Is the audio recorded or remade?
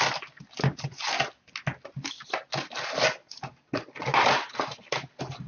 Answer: recorded